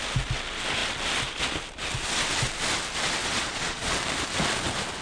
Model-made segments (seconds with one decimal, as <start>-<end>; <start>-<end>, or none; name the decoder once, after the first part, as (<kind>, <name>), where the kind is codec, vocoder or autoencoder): 3.2-4.0 (vocoder, Vocos)